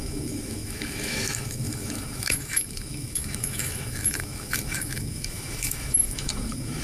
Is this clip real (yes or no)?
no